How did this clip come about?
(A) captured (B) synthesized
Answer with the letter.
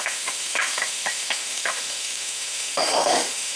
B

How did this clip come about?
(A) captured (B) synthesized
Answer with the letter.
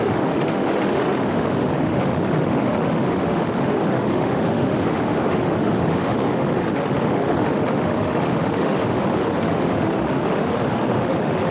B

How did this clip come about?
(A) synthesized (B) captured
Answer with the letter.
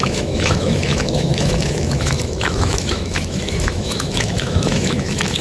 A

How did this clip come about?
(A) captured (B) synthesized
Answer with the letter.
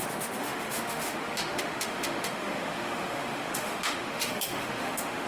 B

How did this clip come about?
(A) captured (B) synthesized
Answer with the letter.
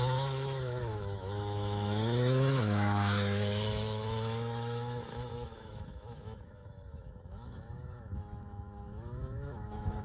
B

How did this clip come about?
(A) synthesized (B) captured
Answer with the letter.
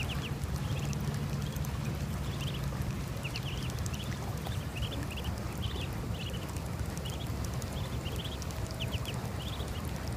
B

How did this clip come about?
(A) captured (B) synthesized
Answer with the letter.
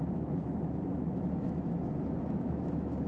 B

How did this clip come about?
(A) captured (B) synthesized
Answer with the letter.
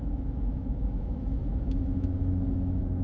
B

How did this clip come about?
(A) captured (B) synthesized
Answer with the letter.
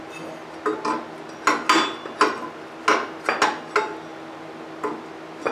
A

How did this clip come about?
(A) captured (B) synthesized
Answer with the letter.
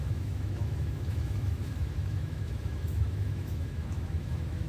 B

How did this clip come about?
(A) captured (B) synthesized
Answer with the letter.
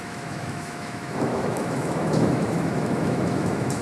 B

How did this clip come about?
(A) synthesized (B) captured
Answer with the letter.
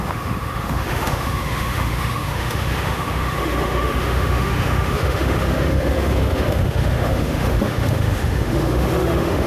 A